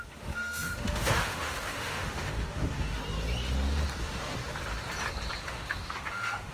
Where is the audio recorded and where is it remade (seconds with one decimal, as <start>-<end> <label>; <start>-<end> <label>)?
0.0-3.0 remade; 3.0-4.0 recorded; 4.0-4.4 remade; 4.4-5.4 recorded; 5.4-6.5 remade